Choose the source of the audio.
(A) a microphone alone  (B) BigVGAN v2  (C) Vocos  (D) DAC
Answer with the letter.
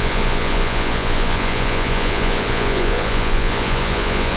C